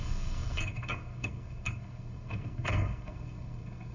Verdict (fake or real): fake